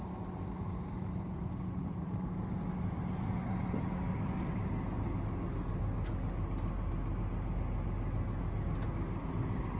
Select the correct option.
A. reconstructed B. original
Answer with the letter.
B